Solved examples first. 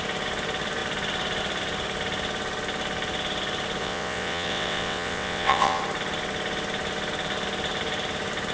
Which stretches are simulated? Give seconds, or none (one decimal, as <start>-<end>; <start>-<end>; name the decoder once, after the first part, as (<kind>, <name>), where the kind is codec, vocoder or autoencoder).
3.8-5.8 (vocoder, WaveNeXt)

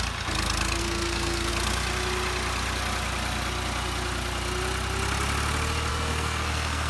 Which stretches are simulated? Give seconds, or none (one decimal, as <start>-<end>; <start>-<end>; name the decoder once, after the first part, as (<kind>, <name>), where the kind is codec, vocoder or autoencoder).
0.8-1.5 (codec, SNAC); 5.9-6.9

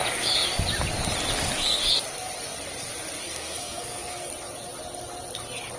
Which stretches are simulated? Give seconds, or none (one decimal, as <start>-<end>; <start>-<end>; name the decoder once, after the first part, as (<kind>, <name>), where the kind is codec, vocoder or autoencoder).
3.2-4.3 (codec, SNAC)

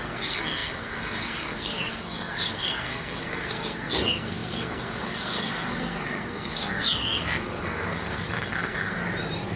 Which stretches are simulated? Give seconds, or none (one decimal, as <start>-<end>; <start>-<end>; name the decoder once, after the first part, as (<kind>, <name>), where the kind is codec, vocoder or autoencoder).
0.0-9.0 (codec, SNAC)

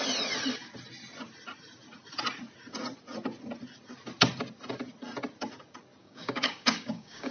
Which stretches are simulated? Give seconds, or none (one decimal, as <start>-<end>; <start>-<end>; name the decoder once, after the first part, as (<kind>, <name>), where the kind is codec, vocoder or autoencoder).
6.0-7.3 (codec, DAC)

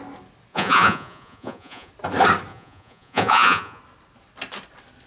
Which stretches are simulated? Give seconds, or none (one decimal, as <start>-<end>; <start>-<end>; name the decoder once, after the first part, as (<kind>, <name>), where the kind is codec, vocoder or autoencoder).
0.5-1.9 (vocoder, Vocos); 2.5-3.8

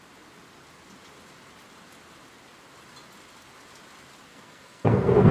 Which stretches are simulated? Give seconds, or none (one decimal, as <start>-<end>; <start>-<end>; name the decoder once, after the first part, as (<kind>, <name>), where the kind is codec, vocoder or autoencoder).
4.3-5.3 (codec, SNAC)